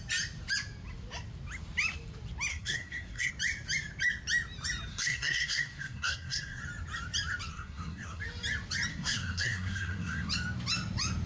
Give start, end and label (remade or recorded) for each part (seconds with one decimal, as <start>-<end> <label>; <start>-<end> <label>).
0.0-2.5 recorded; 2.5-3.3 remade; 3.3-4.9 recorded; 4.9-6.6 remade; 6.6-7.5 recorded; 7.5-8.2 remade; 8.2-8.9 recorded; 8.9-10.3 remade; 10.3-11.3 recorded